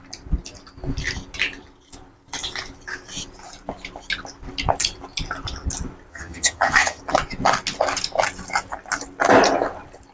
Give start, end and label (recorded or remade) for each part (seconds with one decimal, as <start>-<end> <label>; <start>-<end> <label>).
0.0-6.1 recorded; 6.1-7.0 remade; 7.0-10.1 recorded